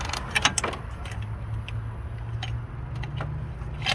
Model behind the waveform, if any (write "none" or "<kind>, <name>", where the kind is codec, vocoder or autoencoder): none